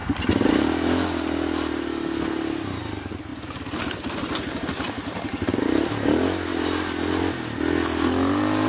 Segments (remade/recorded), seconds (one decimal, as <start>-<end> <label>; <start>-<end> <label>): 0.0-8.7 recorded